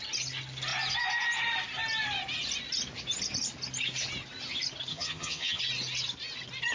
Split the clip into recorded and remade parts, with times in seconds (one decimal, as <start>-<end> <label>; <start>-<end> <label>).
0.0-4.9 recorded; 4.9-5.6 remade; 5.6-6.7 recorded